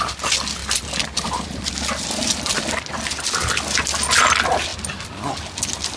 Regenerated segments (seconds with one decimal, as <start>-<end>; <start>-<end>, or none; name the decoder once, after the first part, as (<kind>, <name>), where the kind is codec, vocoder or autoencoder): 0.6-1.7 (vocoder, BigVGAN v2)